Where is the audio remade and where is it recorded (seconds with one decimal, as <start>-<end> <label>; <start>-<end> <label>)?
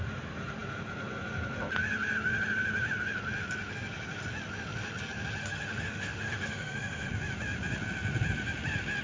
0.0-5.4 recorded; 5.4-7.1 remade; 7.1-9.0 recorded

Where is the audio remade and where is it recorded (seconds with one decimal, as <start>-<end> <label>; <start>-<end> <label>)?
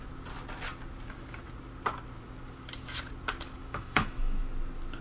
0.0-3.6 recorded; 3.6-4.4 remade; 4.4-5.0 recorded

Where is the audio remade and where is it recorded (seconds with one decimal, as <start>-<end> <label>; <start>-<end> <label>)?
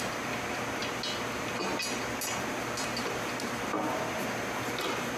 0.0-5.2 recorded